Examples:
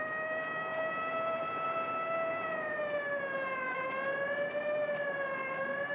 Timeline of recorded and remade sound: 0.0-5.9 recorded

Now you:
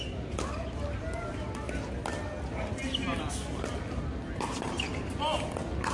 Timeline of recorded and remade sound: 0.0-5.9 recorded

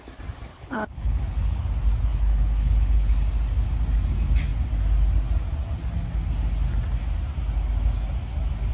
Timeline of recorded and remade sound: 0.0-0.5 recorded; 0.5-1.7 remade; 1.7-2.1 recorded; 2.1-3.1 remade; 3.1-8.7 recorded

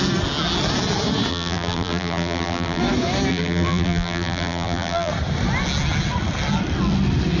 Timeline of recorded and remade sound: 0.0-1.3 recorded; 1.3-2.8 remade; 2.8-3.3 recorded; 3.3-5.1 remade; 5.1-7.4 recorded

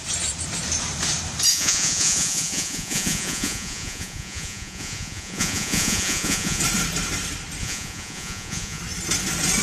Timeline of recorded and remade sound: 0.0-1.5 recorded; 1.5-6.6 remade; 6.6-7.6 recorded; 7.6-8.8 remade; 8.8-9.6 recorded